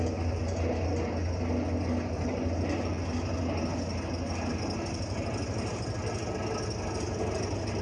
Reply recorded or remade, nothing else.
recorded